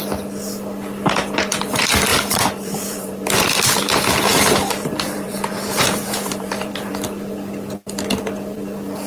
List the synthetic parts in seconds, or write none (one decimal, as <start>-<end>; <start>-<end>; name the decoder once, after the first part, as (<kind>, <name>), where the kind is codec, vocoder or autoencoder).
2.1-3.3 (vocoder, BigVGAN v2); 4.3-6.9